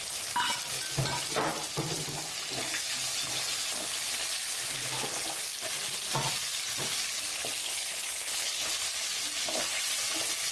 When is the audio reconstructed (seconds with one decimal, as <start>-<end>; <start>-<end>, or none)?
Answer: 7.6-8.7